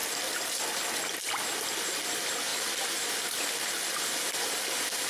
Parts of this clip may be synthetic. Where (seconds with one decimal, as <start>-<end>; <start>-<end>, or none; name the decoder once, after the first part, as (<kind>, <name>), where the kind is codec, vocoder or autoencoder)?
none

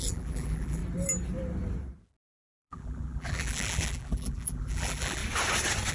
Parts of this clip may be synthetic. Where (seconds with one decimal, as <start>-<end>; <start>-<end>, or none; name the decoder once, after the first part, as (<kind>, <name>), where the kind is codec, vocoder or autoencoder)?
0.0-0.8 (vocoder, BigVGAN v2); 2.6-5.2

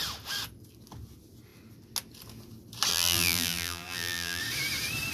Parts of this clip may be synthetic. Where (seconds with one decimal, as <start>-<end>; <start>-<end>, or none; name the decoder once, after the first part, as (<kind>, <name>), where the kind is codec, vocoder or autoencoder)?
2.9-4.4 (vocoder, BigVGAN v2)